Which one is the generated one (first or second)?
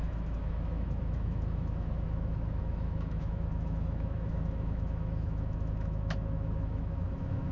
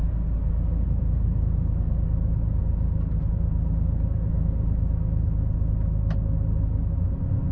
first